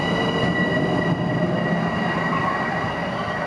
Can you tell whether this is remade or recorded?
recorded